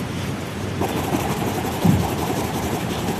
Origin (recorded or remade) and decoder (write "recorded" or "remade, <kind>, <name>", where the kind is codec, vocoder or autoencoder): remade, vocoder, BigVGAN v2